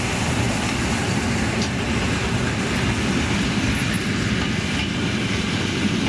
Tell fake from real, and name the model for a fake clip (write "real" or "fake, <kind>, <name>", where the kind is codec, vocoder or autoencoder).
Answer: real